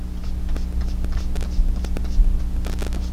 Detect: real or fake real